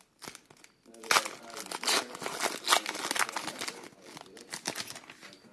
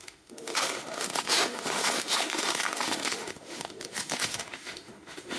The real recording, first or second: first